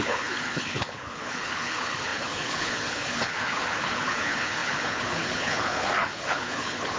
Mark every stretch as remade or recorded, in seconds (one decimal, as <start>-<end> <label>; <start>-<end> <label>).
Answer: 0.0-7.0 remade